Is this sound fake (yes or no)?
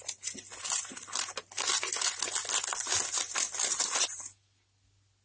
no